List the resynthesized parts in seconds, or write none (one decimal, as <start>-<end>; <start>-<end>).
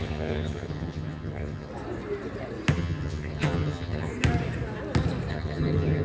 0.0-1.7; 2.7-4.1; 5.3-6.0